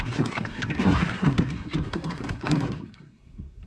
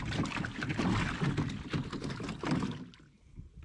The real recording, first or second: second